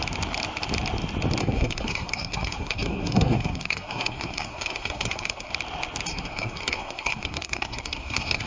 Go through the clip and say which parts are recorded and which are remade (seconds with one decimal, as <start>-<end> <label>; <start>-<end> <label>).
0.0-1.4 recorded; 1.4-5.5 remade; 5.5-6.1 recorded; 6.1-8.5 remade